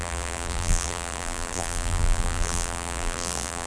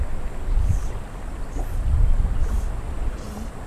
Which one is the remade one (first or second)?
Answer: first